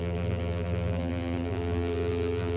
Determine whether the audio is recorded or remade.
remade